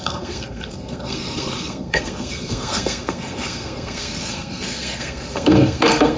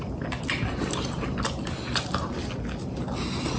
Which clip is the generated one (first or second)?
first